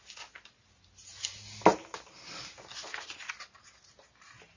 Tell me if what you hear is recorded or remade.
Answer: recorded